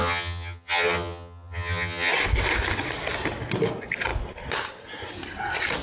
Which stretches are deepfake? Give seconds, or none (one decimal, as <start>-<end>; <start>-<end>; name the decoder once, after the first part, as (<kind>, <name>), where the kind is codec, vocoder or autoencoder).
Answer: 0.0-2.1 (vocoder, HiFi-GAN)